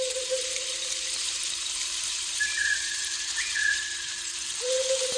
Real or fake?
fake